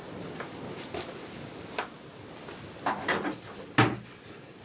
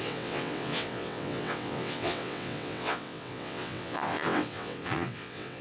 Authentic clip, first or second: first